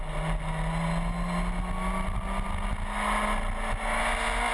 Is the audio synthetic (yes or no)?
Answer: no